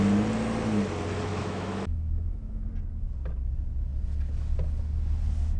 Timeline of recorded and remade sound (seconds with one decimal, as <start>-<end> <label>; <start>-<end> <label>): 0.0-1.3 recorded; 1.3-2.7 remade; 2.7-5.6 recorded

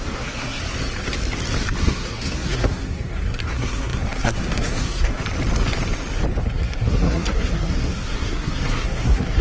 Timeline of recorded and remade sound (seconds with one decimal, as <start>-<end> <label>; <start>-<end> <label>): 0.0-0.6 remade; 0.6-1.8 recorded; 1.8-5.2 remade; 5.2-6.4 recorded; 6.4-9.4 remade

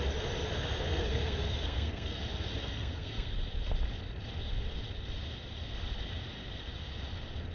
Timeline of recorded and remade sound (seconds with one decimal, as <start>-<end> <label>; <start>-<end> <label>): 0.0-0.9 recorded; 0.9-2.2 remade; 2.2-2.6 recorded; 2.6-3.3 remade; 3.3-7.5 recorded

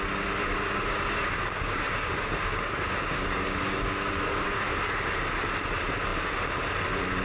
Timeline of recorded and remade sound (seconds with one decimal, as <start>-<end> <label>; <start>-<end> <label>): 0.0-0.4 recorded; 0.4-4.7 remade; 4.7-7.2 recorded

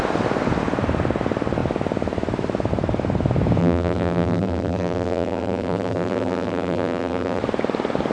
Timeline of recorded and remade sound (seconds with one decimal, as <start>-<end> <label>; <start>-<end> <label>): 0.0-3.6 recorded; 3.6-7.4 remade; 7.4-8.1 recorded